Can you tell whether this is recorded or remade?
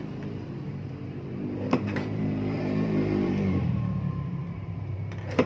remade